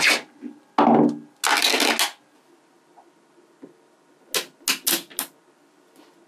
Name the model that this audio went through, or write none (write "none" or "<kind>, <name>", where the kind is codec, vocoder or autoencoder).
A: none